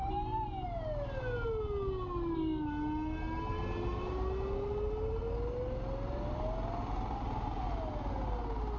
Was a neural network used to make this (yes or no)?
no